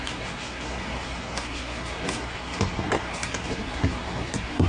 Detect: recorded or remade remade